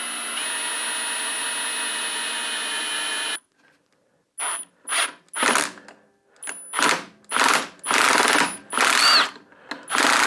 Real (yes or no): yes